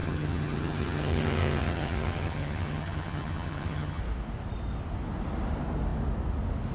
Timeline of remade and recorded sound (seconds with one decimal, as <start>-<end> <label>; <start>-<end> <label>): 0.0-4.0 remade; 4.0-6.7 recorded